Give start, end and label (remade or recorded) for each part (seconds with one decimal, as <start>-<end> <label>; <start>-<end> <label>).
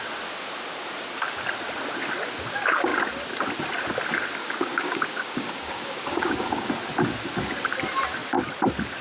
0.0-4.4 recorded; 4.4-6.7 remade; 6.7-9.0 recorded